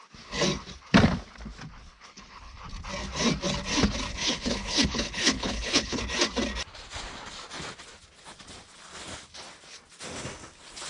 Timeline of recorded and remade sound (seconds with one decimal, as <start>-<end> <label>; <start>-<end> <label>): 0.0-1.8 recorded; 1.8-2.6 remade; 2.6-4.1 recorded; 4.1-6.0 remade; 6.0-10.9 recorded